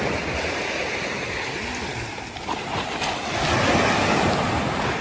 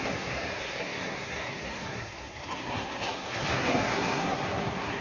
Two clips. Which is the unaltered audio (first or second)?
first